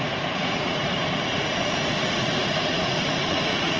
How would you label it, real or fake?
fake